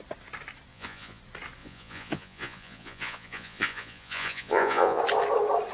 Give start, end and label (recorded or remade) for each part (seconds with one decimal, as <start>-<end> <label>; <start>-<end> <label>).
0.0-0.7 recorded; 0.7-1.2 remade; 1.2-1.6 recorded; 1.6-5.0 remade; 5.0-5.7 recorded